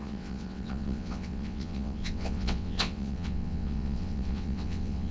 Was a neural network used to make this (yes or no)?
yes